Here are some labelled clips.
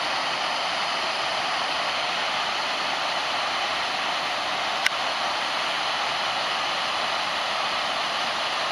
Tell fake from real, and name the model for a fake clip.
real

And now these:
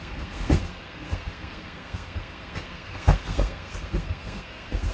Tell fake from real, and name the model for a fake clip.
fake, codec, SNAC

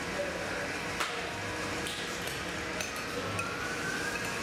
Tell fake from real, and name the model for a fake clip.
real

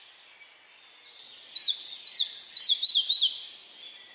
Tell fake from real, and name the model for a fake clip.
real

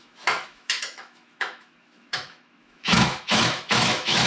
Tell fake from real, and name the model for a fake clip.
fake, autoencoder, DAC-VAE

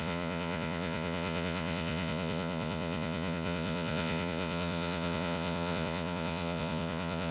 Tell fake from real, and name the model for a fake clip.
fake, vocoder, Vocos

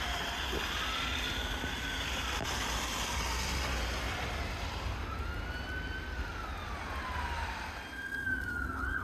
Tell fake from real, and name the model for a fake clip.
real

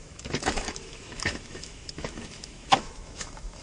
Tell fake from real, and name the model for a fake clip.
fake, autoencoder, DAC-VAE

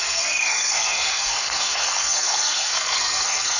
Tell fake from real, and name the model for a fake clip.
fake, codec, SNAC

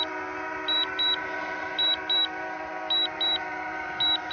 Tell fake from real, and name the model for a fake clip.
real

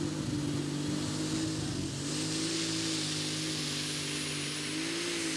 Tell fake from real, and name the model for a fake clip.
real